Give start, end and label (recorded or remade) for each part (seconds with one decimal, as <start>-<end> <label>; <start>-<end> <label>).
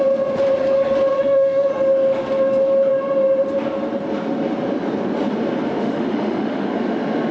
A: 0.0-1.1 recorded; 1.1-1.7 remade; 1.7-5.8 recorded; 5.8-6.7 remade; 6.7-7.3 recorded